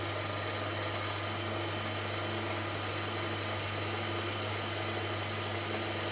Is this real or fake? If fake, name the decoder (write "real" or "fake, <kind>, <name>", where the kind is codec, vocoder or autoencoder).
real